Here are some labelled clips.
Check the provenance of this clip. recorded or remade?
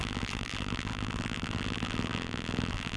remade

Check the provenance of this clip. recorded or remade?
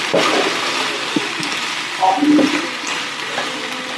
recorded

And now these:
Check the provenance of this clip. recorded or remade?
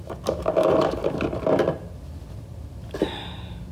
recorded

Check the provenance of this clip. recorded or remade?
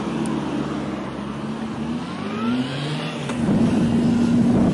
recorded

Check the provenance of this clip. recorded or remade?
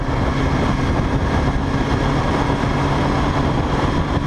recorded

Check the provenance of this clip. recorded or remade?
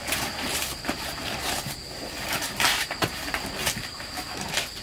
remade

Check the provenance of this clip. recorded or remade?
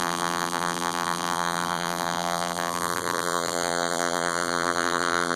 remade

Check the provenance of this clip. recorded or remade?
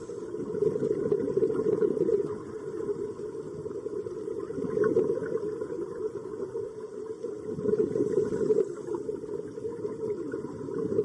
recorded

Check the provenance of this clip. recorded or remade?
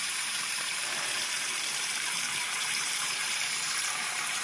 remade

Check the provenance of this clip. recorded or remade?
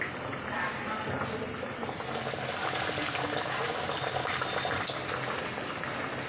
recorded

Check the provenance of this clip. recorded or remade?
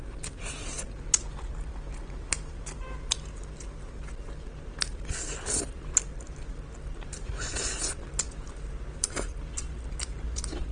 recorded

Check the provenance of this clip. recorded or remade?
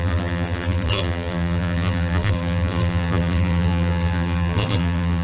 remade